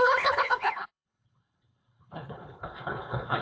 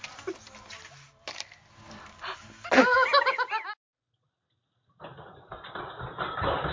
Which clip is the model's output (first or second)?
first